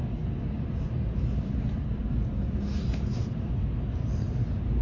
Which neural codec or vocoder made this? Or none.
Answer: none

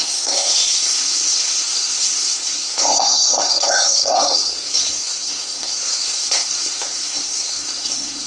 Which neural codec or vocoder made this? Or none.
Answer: codec, SNAC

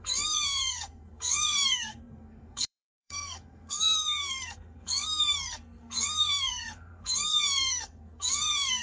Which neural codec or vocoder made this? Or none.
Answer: codec, SNAC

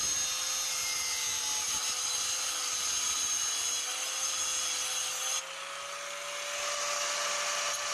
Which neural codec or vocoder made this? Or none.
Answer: none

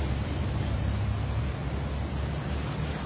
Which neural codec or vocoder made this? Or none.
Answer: none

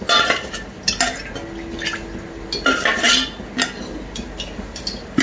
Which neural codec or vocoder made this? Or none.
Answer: none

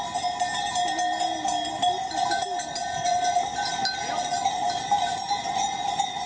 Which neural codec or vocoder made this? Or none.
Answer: none